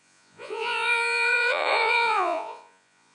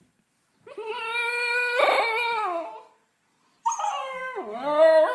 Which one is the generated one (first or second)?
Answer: first